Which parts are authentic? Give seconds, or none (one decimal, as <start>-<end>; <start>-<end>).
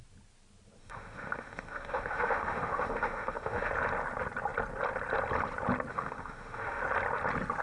0.0-0.8; 3.7-5.9; 6.8-7.6